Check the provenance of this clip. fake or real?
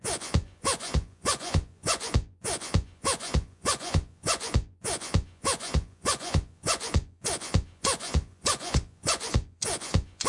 fake